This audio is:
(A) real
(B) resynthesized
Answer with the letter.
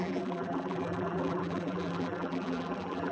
B